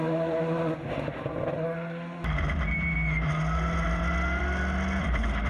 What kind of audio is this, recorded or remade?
recorded